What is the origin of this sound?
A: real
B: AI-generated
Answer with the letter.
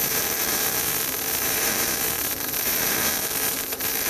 B